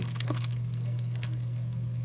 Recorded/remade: remade